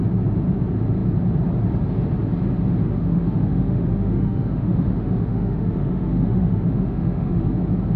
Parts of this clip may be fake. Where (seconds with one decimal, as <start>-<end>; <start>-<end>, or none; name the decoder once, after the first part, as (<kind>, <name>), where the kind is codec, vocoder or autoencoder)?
2.8-7.5 (autoencoder, DAC-VAE)